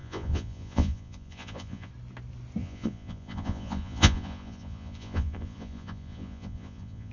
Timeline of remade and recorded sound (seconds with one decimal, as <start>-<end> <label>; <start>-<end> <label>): 0.0-1.9 remade; 1.9-2.6 recorded; 2.6-7.1 remade